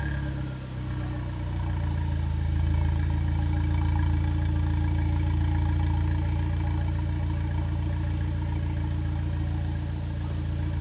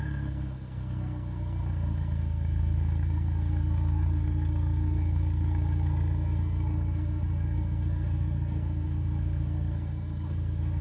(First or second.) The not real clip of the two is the second